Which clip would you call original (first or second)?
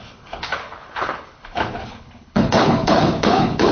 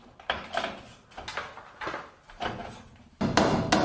second